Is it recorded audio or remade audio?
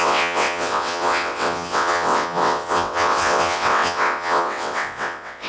remade